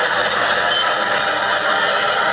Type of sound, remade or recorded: recorded